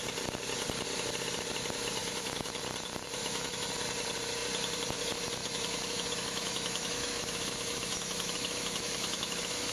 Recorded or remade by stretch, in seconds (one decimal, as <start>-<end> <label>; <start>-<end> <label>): 0.0-2.0 recorded; 2.0-2.6 remade; 2.6-3.2 recorded; 3.2-3.7 remade; 3.7-5.4 recorded; 5.4-9.7 remade